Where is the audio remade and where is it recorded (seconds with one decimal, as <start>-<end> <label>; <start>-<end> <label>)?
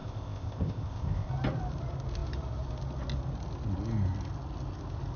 0.0-1.3 remade; 1.3-5.2 recorded